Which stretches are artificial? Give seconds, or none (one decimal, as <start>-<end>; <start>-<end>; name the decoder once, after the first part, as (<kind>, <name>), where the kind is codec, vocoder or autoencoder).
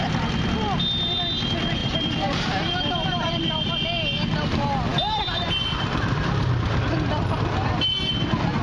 1.8-3.7 (vocoder, BigVGAN v2)